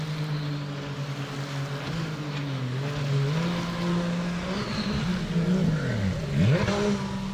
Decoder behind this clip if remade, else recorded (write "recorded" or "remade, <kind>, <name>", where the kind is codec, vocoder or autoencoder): recorded